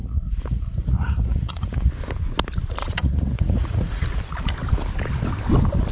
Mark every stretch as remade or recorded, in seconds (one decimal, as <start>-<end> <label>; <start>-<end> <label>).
0.0-1.9 remade; 1.9-2.8 recorded; 2.8-4.2 remade; 4.2-5.9 recorded